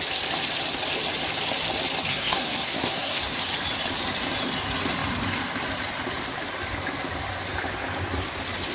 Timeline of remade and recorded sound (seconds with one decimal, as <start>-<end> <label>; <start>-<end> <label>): 0.0-2.1 recorded; 2.1-3.4 remade; 3.4-8.7 recorded